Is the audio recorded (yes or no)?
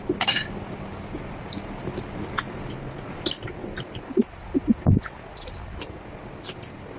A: yes